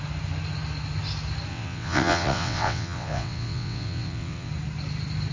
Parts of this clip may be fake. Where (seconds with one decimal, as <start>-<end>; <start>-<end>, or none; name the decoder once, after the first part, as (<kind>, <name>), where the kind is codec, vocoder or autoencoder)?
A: 1.5-4.5 (vocoder, WaveNeXt)